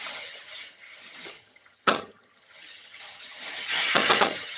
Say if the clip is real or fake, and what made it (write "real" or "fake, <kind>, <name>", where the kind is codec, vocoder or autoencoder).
fake, vocoder, HiFi-GAN